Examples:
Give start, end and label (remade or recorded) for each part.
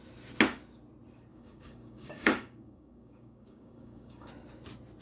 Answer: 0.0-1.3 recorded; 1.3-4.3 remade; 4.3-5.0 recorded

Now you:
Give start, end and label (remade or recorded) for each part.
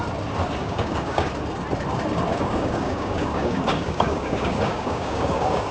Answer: 0.0-0.6 recorded; 0.6-1.3 remade; 1.3-2.3 recorded; 2.3-5.7 remade